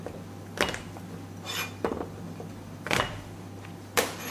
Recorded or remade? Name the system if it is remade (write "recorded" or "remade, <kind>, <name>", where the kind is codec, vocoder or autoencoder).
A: recorded